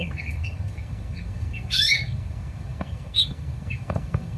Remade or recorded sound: remade